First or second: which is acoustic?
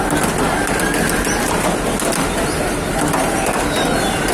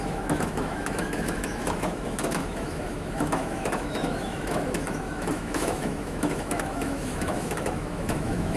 first